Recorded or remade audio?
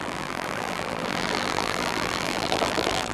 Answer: remade